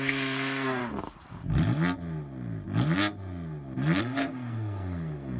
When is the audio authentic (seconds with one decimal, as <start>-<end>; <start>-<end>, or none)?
0.8-4.0